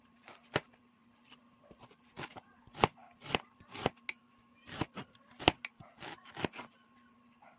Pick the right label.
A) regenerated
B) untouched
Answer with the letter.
B